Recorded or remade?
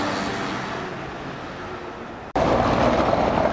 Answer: recorded